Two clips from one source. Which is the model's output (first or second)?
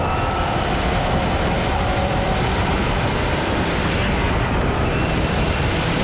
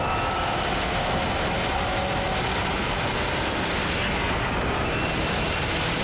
first